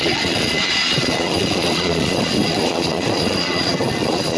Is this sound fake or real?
fake